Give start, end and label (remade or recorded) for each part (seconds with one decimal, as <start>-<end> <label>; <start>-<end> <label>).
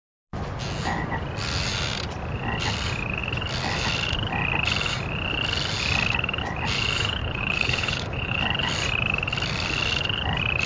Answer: 0.0-7.2 recorded; 7.2-8.4 remade; 8.4-10.7 recorded